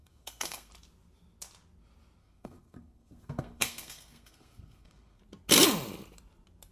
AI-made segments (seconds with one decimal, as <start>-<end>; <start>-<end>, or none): 0.0-0.7; 2.2-5.2